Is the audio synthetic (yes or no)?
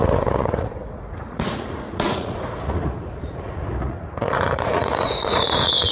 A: yes